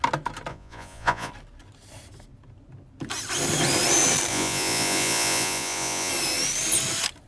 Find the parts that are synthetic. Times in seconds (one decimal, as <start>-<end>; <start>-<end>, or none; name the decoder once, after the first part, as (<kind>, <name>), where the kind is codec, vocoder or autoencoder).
0.5-1.3 (vocoder, Vocos); 4.3-6.1